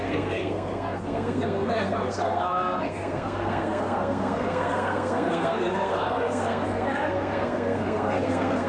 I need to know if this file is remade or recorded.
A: remade